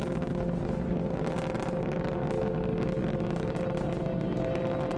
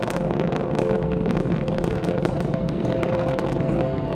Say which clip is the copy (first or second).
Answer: second